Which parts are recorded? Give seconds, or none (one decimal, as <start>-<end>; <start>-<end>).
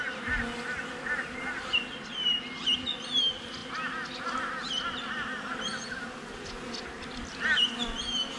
0.0-8.4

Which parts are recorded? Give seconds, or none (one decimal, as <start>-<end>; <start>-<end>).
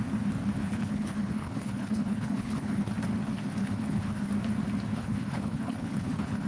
0.0-0.6; 2.9-3.6; 4.3-4.9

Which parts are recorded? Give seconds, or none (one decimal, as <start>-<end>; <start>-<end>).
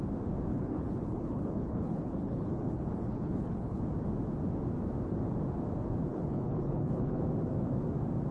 0.0-0.5; 3.8-6.1; 7.2-8.3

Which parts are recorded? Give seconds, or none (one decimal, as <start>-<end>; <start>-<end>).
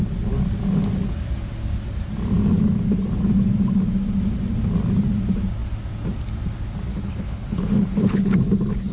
0.0-6.9; 8.3-8.9